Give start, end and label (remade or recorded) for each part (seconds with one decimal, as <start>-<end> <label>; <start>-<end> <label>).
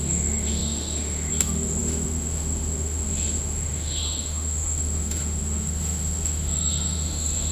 0.0-7.5 remade